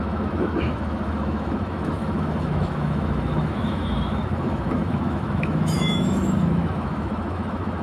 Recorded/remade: remade